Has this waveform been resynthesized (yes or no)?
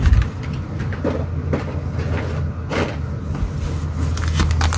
no